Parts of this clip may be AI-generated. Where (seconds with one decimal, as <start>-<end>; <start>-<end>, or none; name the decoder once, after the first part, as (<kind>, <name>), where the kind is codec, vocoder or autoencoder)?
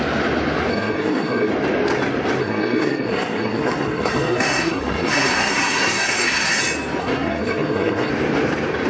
0.7-1.5 (codec, SNAC); 2.4-6.6; 7.0-8.1